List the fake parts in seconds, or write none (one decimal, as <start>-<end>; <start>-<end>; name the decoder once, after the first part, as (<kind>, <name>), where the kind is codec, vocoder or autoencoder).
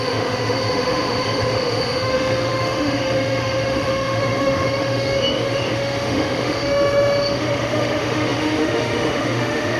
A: 0.0-9.8 (autoencoder, DAC-VAE)